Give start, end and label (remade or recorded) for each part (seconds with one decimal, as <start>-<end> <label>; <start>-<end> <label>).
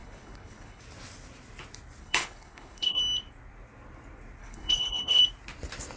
0.0-0.8 remade; 0.8-2.0 recorded; 2.0-3.0 remade; 3.0-4.4 recorded; 4.4-5.2 remade; 5.2-6.0 recorded